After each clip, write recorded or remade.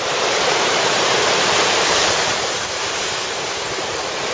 remade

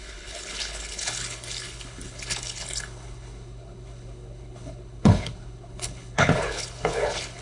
remade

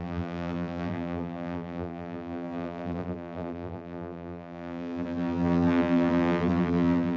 remade